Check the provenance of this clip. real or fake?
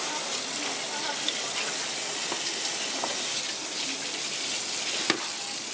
real